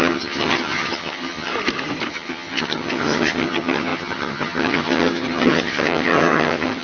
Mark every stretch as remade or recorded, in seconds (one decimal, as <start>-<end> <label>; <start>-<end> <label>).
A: 0.0-1.5 remade; 1.5-2.1 recorded; 2.1-6.8 remade